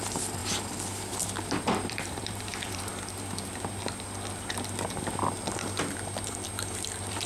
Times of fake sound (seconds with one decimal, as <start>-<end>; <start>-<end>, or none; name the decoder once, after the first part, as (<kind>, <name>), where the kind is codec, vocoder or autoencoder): 0.0-0.4 (vocoder, BigVGAN v2); 1.1-2.9